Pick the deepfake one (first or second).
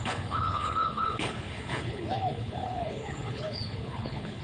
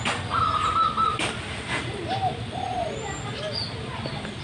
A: first